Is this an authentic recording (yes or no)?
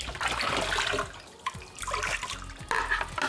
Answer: yes